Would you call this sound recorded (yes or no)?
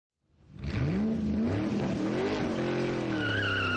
yes